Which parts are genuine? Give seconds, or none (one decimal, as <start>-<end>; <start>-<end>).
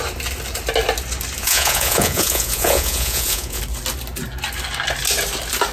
0.0-1.4; 3.6-5.7